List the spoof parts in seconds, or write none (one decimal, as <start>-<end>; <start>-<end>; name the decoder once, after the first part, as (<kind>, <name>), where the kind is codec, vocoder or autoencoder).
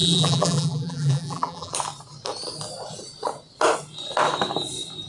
0.0-1.7 (vocoder, BigVGAN v2)